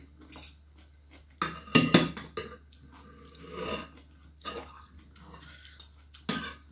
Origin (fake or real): real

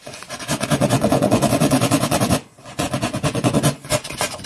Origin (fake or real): fake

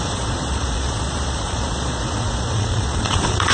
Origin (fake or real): fake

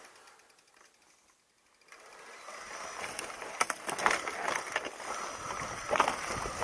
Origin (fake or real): real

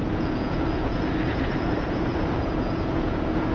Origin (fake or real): fake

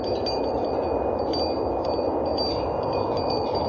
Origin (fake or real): real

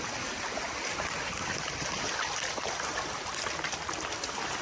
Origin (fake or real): real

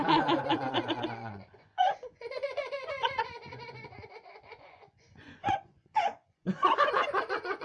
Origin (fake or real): fake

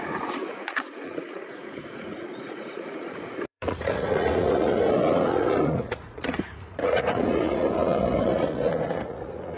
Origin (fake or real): fake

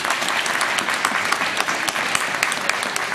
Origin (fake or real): real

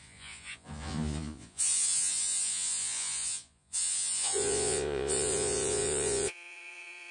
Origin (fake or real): fake